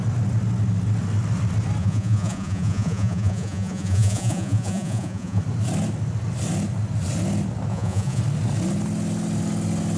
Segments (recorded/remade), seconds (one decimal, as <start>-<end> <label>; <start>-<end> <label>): 0.0-1.8 recorded; 1.8-5.4 remade; 5.4-7.7 recorded; 7.7-8.2 remade; 8.2-10.0 recorded